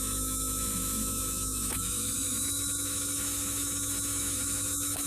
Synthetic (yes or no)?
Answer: yes